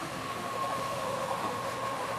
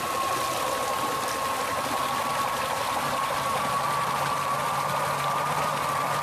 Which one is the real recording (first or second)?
second